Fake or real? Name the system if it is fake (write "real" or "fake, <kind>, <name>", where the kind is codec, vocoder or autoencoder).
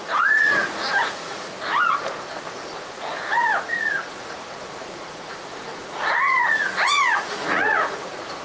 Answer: fake, vocoder, Vocos